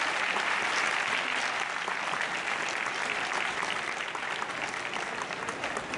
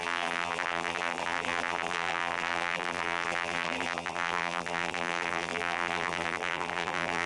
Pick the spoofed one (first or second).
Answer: second